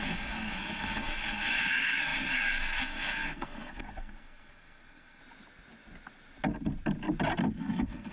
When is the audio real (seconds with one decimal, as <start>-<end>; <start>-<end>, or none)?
5.2-7.6